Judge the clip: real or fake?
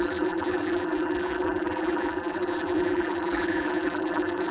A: fake